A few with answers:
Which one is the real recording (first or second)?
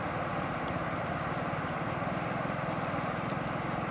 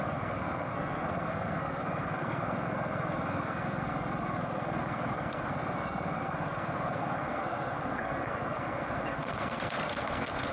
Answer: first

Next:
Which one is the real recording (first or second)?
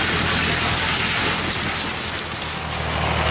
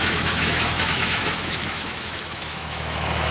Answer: first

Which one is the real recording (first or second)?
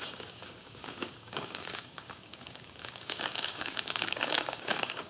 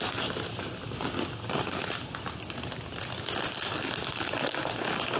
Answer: second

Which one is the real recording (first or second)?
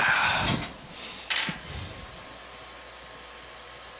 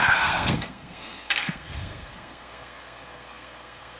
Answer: first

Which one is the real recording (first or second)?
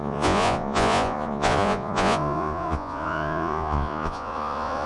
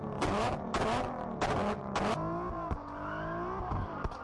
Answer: second